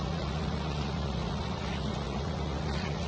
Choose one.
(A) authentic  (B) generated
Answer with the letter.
B